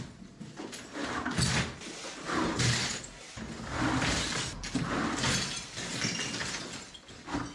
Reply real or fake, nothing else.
real